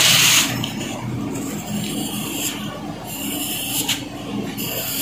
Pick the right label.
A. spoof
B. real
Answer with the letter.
A